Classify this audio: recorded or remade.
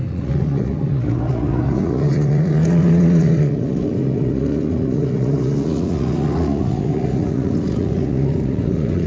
remade